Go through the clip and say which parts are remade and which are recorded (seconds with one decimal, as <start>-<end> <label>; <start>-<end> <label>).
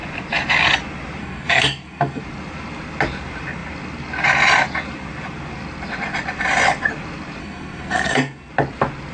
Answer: 0.0-1.2 recorded; 1.2-2.2 remade; 2.2-7.4 recorded; 7.4-8.5 remade; 8.5-9.1 recorded